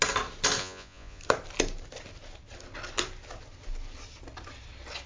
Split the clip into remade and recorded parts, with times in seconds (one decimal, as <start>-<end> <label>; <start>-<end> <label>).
0.0-0.6 recorded; 0.6-1.2 remade; 1.2-5.1 recorded